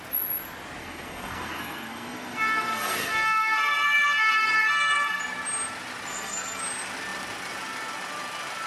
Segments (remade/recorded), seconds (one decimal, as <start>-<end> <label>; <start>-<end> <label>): 0.0-0.8 recorded; 0.8-5.2 remade; 5.2-6.1 recorded; 6.1-6.6 remade; 6.6-8.7 recorded